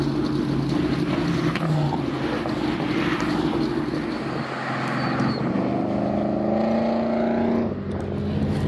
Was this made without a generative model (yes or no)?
yes